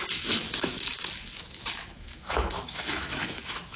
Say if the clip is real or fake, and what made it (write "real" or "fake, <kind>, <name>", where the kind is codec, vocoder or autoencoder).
fake, autoencoder, DAC-VAE